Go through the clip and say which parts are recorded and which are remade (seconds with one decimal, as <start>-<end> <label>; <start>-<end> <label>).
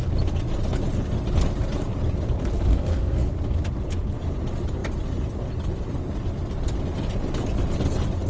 0.0-2.7 recorded; 2.7-3.3 remade; 3.3-8.3 recorded